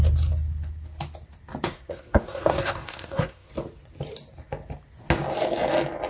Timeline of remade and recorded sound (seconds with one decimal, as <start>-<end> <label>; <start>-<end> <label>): 0.0-1.7 recorded; 1.7-3.5 remade; 3.5-6.1 recorded